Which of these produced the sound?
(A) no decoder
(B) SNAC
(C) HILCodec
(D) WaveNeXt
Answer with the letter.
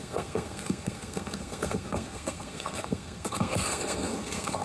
B